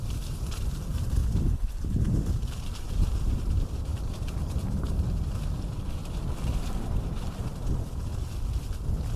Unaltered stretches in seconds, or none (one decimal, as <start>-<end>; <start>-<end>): 1.2-1.8; 6.0-6.6; 8.1-9.2